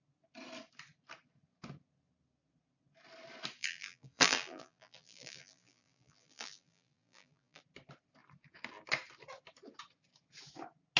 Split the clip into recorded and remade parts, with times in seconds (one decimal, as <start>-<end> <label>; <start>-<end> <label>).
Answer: 0.0-3.6 recorded; 3.6-7.6 remade; 7.6-11.0 recorded